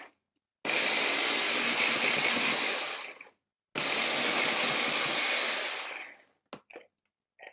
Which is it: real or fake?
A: real